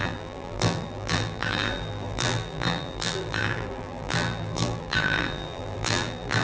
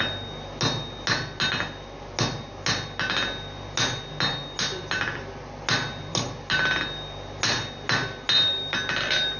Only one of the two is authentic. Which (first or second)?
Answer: second